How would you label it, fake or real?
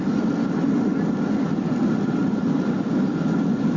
real